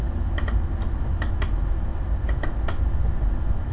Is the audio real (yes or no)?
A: yes